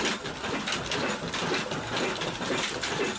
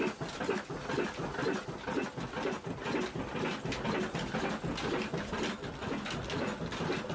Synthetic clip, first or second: first